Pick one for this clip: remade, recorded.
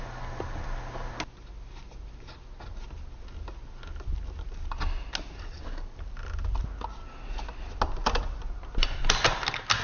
recorded